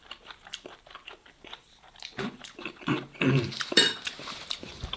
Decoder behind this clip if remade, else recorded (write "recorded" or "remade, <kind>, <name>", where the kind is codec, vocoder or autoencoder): remade, vocoder, BigVGAN v2